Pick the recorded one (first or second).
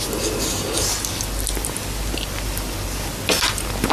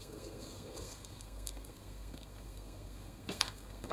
first